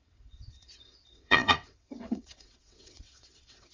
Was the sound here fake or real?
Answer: fake